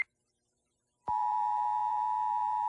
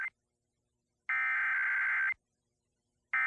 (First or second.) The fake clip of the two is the first